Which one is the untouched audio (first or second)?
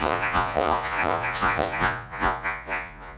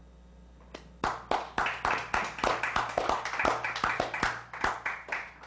second